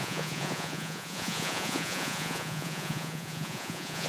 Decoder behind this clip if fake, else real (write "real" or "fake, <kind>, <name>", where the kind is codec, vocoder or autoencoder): fake, vocoder, Vocos